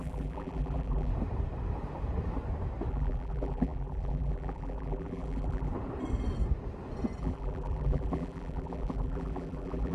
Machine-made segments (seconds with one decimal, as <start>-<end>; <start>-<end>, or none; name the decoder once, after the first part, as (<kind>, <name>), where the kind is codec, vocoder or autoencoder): 0.0-1.1 (vocoder, BigVGAN v2); 2.9-5.7; 7.2-9.9